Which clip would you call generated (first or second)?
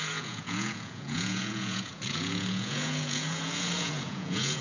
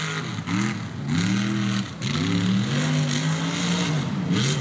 first